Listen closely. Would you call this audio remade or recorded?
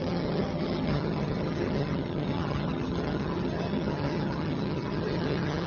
remade